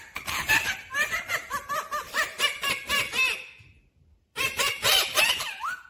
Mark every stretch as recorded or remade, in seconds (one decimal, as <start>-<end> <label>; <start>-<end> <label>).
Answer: 0.0-2.9 remade; 2.9-4.2 recorded; 4.2-5.9 remade